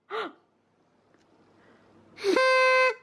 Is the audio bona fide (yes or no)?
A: yes